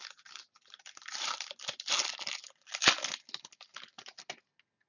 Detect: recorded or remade recorded